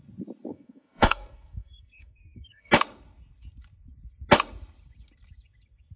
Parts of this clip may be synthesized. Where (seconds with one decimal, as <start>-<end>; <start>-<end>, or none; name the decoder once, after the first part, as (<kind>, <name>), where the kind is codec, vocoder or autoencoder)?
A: 0.5-2.7 (codec, SNAC)